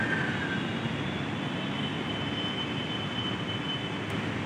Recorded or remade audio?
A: recorded